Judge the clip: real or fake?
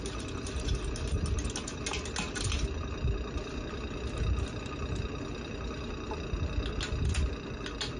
real